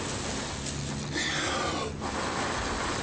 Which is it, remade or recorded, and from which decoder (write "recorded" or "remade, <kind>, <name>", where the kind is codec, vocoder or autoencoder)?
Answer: recorded